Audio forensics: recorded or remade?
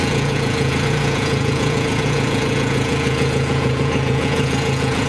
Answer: remade